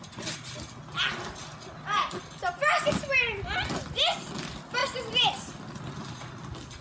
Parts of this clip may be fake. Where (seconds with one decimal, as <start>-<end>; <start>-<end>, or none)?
none